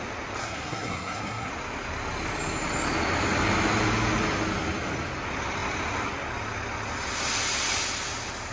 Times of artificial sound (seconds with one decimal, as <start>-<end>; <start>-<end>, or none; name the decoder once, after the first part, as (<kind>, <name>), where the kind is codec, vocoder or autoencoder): 0.4-1.5 (codec, SNAC)